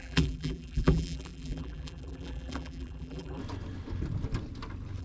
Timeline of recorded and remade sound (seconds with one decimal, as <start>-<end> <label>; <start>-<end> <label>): 0.0-3.4 remade; 3.4-5.0 recorded